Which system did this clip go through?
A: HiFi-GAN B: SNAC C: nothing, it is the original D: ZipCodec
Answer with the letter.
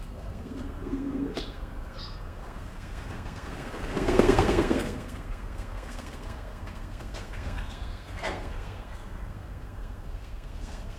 B